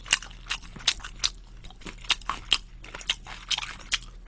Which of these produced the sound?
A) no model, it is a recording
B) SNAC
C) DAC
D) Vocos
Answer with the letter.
A